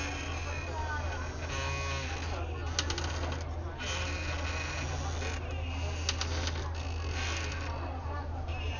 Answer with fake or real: real